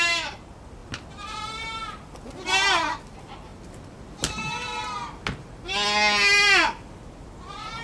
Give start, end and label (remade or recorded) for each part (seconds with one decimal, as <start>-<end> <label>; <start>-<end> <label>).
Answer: 0.0-7.8 recorded